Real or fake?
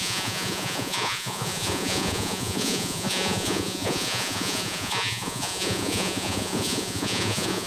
fake